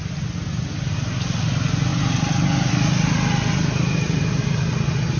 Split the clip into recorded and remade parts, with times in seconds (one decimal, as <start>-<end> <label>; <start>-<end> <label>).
0.0-5.2 recorded